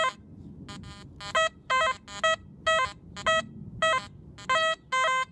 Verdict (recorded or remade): recorded